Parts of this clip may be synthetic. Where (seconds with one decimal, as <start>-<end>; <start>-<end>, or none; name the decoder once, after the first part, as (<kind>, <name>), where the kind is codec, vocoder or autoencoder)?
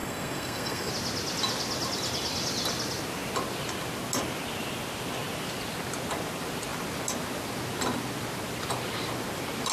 0.0-0.9 (codec, SNAC)